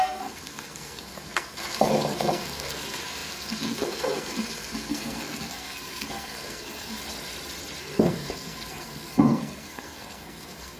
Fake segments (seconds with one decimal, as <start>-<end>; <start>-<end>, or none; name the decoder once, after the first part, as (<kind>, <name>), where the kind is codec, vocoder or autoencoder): 0.0-7.0 (codec, SNAC); 7.8-10.8